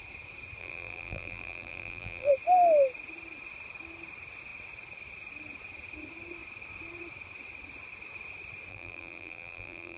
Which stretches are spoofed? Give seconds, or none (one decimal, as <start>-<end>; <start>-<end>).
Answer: 0.6-2.3; 8.7-10.0